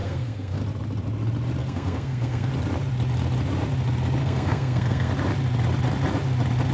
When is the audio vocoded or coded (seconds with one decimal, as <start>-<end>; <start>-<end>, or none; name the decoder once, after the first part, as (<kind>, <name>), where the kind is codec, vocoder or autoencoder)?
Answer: 0.0-0.6 (codec, SNAC); 1.6-2.5; 4.2-5.1